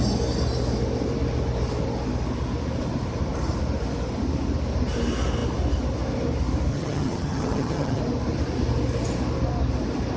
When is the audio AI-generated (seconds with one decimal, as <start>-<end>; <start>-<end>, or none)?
6.7-8.0